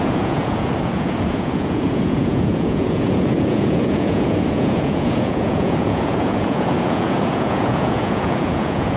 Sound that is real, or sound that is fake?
fake